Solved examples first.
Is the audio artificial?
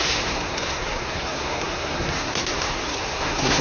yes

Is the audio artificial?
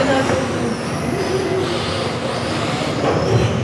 no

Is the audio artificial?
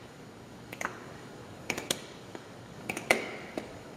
yes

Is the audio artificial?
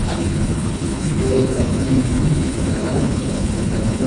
yes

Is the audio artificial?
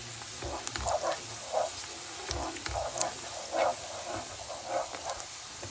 no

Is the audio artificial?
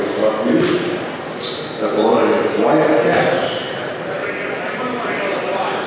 no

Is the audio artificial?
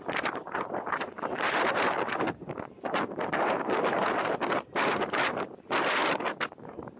yes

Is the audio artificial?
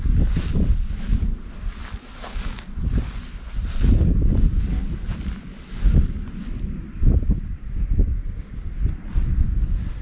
no